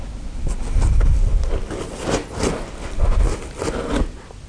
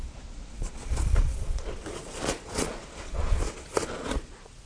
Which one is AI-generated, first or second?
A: second